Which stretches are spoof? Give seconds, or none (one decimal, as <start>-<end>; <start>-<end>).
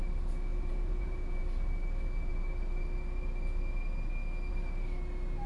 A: 0.5-1.4